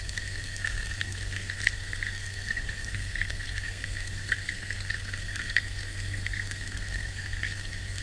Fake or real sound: fake